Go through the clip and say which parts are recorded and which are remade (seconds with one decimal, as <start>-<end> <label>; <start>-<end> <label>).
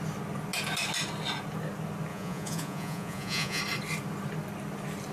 0.0-2.1 recorded; 2.1-3.6 remade; 3.6-5.1 recorded